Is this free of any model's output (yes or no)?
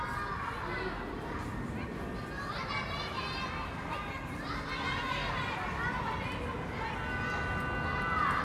yes